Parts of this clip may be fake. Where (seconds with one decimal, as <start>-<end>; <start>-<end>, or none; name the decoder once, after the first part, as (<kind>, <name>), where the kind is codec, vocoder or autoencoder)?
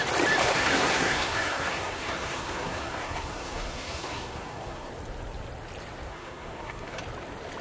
0.4-4.9 (codec, SNAC); 6.1-7.0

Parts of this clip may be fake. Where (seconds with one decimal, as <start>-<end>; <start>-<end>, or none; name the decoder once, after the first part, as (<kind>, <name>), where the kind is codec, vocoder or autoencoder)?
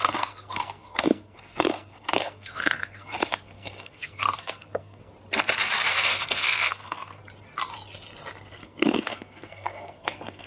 0.0-5.1 (codec, SNAC); 5.9-7.2; 8.5-10.5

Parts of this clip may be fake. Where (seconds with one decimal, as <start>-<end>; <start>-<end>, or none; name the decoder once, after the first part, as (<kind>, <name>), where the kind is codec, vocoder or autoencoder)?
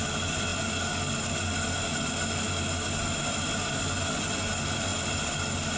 none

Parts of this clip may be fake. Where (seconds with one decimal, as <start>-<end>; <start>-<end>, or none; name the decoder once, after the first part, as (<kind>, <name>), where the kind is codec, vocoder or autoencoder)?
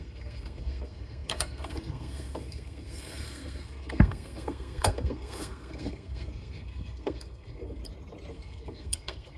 0.0-7.8 (codec, SNAC); 8.3-9.4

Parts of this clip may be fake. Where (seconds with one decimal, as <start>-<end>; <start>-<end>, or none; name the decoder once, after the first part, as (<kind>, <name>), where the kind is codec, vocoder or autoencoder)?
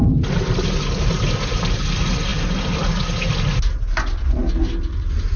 none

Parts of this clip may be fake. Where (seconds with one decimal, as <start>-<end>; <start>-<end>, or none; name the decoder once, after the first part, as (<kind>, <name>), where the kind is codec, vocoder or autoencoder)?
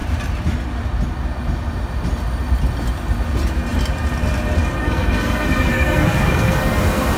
4.8-7.2 (codec, SNAC)